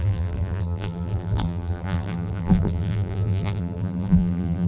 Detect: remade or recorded remade